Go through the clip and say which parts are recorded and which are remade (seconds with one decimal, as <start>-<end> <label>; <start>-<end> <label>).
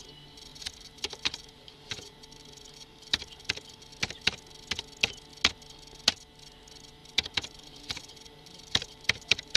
0.0-0.5 recorded; 0.5-3.9 remade; 3.9-7.0 recorded; 7.0-9.6 remade